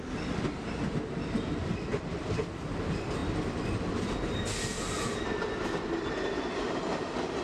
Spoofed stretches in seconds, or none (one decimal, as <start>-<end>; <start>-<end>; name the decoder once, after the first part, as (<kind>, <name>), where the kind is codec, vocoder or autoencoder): none